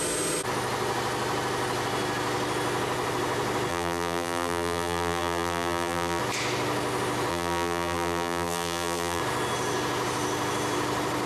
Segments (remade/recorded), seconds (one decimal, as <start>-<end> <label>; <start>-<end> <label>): 0.0-3.7 recorded; 3.7-6.2 remade; 6.2-7.3 recorded; 7.3-9.2 remade; 9.2-11.3 recorded